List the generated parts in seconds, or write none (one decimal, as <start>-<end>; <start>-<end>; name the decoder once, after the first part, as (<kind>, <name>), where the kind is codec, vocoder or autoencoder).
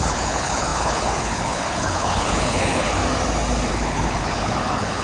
0.0-3.0 (codec, HILCodec); 3.7-5.0